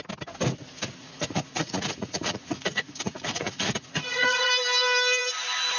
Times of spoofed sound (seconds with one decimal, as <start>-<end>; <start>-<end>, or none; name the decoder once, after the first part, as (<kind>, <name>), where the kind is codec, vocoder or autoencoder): 1.0-4.5 (vocoder, Vocos)